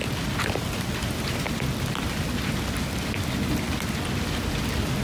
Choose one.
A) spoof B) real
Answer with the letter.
B